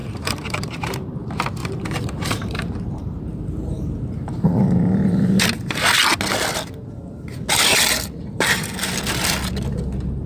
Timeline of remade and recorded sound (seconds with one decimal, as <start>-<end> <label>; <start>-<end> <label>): 0.0-1.2 remade; 1.2-1.6 recorded; 1.6-5.4 remade; 5.4-10.3 recorded